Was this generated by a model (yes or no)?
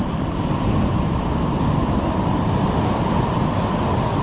no